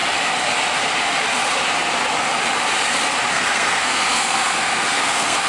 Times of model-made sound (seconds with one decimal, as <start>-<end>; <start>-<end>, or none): 3.3-5.5